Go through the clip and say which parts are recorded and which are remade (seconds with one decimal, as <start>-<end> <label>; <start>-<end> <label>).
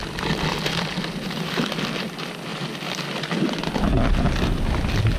0.0-5.2 recorded